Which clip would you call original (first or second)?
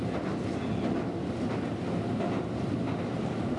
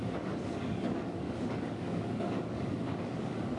first